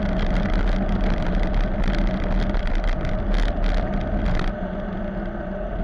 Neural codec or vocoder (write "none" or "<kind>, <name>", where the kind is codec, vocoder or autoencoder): none